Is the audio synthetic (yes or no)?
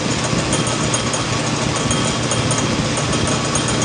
no